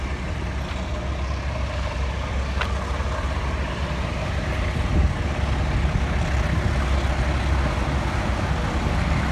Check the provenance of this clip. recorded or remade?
recorded